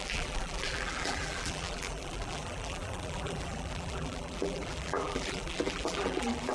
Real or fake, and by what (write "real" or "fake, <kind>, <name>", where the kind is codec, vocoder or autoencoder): fake, vocoder, BigVGAN v2